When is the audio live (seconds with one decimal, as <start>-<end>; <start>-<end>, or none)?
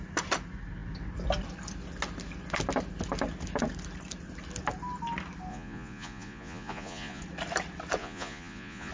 0.0-5.5; 7.2-8.0